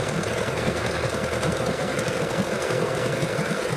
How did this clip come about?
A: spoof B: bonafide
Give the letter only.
A